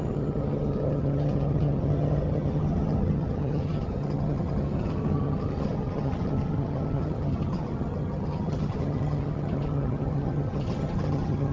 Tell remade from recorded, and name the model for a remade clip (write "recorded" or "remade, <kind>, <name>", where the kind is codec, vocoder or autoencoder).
remade, vocoder, HiFi-GAN